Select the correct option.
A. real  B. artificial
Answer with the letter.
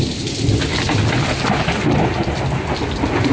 A